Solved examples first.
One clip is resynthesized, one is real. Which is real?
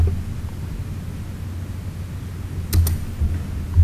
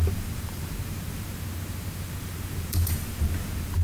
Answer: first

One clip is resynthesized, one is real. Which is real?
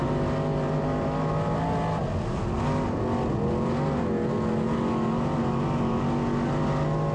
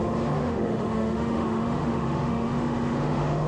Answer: first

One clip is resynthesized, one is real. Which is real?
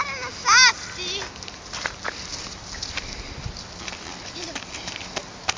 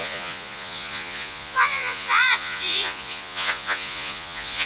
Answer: first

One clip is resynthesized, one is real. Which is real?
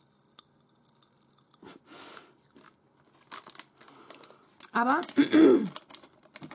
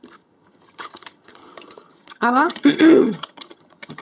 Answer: first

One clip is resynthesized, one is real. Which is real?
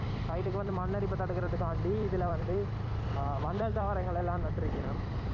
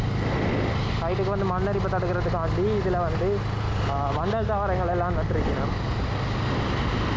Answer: second